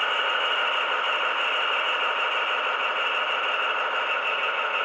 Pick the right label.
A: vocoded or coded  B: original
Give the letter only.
B